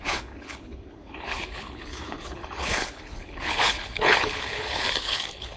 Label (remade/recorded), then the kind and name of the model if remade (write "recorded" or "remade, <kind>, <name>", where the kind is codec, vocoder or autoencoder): remade, codec, HILCodec